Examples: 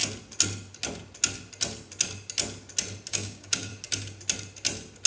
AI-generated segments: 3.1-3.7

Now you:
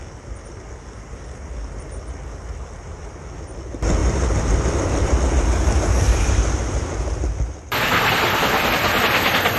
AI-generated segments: none